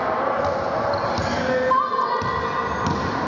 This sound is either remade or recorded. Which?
recorded